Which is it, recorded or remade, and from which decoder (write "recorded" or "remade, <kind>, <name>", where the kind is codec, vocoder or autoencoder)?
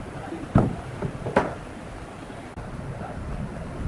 recorded